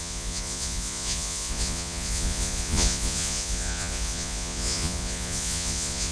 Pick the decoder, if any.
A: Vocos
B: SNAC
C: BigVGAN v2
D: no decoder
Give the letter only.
A